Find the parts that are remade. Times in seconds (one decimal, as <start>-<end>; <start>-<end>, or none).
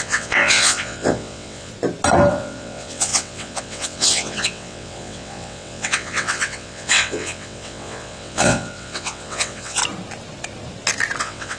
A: 0.0-1.7; 2.3-9.8; 11.2-11.6